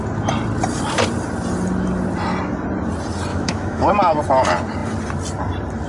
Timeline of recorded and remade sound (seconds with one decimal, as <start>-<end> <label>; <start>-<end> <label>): 0.0-3.3 recorded; 3.3-3.9 remade; 3.9-5.9 recorded